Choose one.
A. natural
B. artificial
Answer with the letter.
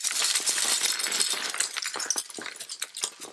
A